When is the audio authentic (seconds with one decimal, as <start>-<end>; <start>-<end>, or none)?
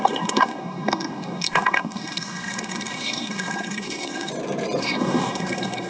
4.3-4.8